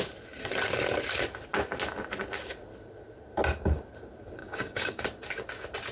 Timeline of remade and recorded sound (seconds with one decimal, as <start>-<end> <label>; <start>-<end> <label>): 0.0-4.4 recorded; 4.4-5.0 remade; 5.0-5.9 recorded